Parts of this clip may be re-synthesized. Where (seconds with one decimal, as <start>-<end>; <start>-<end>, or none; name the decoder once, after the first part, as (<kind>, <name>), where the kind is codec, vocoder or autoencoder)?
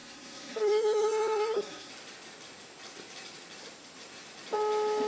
0.0-1.9 (codec, SNAC)